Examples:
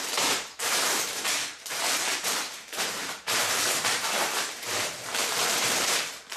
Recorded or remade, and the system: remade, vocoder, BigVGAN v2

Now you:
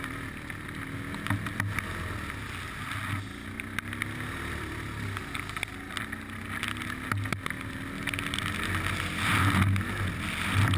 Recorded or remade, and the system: recorded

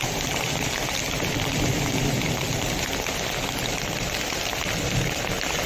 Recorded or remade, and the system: recorded